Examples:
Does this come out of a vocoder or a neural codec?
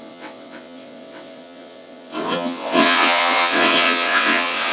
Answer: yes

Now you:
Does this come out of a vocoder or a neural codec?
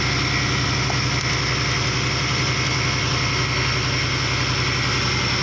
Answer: no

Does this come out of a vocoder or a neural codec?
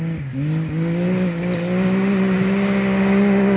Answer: no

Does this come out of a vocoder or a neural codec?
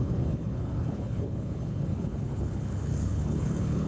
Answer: yes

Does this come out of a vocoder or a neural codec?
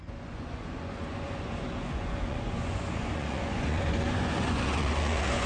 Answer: yes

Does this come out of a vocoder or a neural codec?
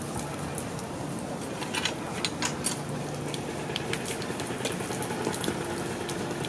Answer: no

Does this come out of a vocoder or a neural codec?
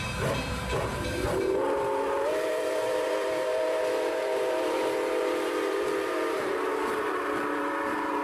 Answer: yes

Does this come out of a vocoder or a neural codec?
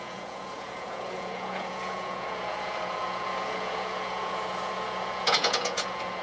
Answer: yes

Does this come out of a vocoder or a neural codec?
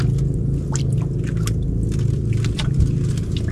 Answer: no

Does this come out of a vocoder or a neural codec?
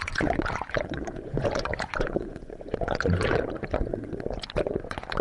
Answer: yes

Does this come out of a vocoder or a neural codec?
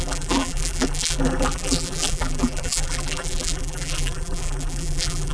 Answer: yes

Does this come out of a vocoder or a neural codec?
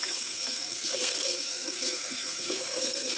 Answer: yes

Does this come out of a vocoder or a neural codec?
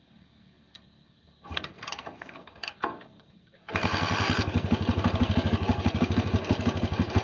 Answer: yes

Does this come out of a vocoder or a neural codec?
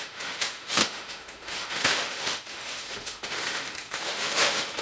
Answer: yes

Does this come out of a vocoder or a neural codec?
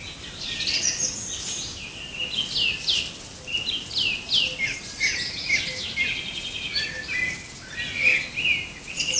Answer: no